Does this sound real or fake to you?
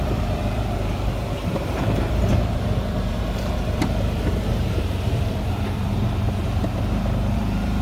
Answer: fake